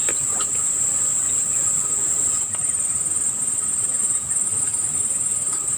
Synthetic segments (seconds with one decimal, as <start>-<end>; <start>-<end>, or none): 0.0-1.6; 4.7-5.8